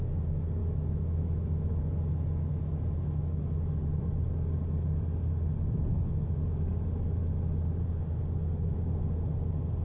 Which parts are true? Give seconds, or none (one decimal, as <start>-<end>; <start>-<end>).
0.0-0.6; 1.8-2.5; 3.4-9.8